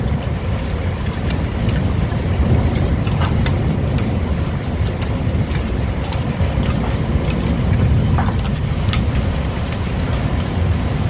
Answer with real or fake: real